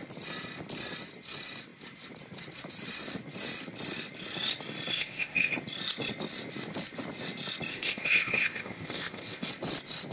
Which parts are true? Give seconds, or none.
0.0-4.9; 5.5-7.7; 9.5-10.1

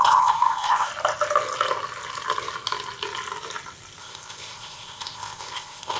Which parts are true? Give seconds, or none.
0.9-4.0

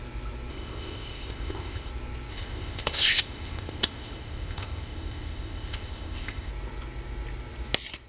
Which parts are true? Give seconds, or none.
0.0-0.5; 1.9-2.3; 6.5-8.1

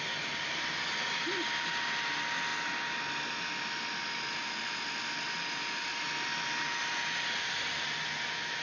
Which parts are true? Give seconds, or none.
0.0-8.6

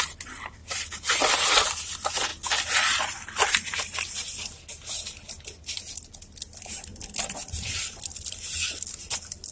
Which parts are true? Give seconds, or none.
0.0-9.5